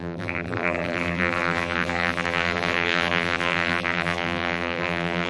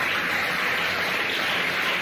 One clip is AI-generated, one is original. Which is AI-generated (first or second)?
first